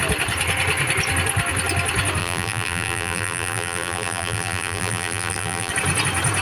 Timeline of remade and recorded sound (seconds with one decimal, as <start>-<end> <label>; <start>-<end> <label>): 0.0-2.2 recorded; 2.2-5.7 remade; 5.7-6.4 recorded

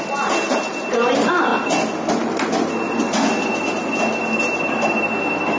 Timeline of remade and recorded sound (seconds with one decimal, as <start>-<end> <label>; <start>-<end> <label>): 0.0-5.6 recorded